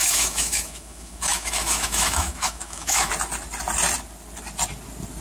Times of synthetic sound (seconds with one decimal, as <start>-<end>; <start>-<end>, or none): 0.0-3.1